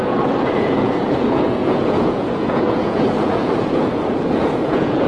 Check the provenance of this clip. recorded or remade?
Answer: remade